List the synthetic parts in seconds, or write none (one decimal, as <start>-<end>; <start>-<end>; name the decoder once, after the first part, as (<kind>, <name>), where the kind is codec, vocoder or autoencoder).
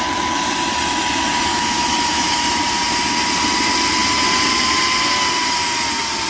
1.5-2.4 (autoencoder, DAC-VAE)